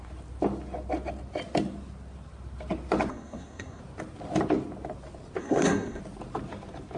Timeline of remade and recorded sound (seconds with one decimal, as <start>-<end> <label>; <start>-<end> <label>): 0.0-3.1 recorded; 3.1-3.8 remade; 3.8-5.4 recorded; 5.4-6.0 remade; 6.0-7.0 recorded